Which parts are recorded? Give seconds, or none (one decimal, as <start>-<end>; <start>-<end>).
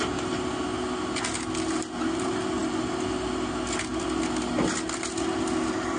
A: 0.0-6.0